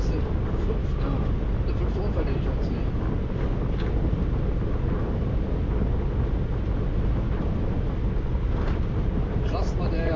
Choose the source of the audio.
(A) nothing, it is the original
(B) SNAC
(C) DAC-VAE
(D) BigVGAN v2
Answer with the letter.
A